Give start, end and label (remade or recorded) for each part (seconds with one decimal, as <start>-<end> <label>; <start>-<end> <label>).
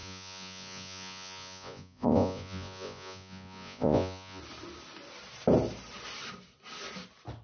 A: 0.0-4.4 remade; 4.4-7.4 recorded